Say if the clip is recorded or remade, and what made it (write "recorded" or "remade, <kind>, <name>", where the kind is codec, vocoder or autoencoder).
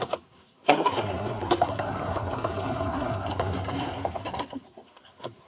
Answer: remade, codec, SNAC